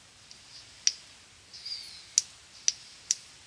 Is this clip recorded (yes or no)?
yes